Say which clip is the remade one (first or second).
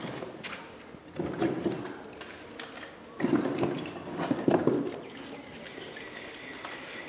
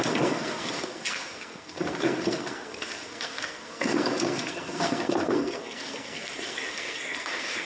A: second